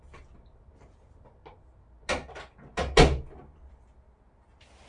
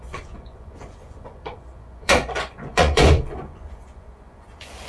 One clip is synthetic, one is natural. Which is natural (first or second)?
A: first